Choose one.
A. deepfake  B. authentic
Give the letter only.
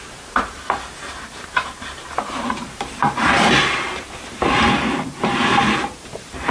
A